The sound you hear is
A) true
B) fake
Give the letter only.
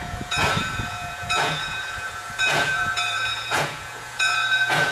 B